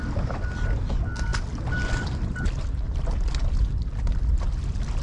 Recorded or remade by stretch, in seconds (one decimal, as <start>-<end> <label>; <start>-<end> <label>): 0.0-5.0 recorded